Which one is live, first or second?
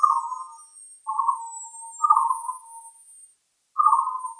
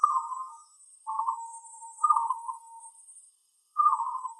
first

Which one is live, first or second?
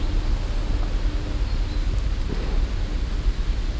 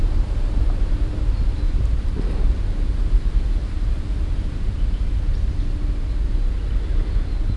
first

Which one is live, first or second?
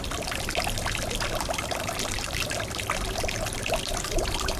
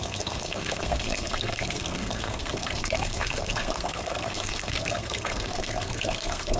first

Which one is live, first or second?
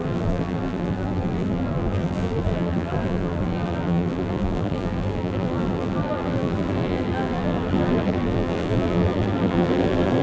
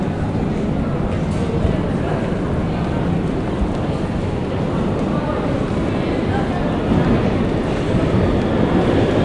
second